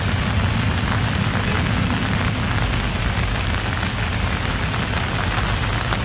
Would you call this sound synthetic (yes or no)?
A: no